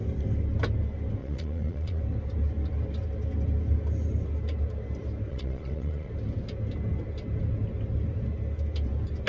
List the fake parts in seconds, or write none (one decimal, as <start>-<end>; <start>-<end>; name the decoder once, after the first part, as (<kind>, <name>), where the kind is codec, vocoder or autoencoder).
1.2-2.0 (vocoder, Vocos); 5.3-6.1